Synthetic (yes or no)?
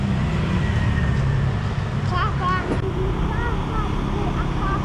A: no